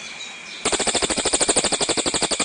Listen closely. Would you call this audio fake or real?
real